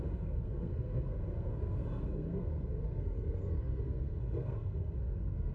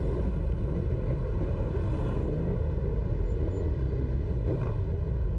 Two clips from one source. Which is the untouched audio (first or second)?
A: second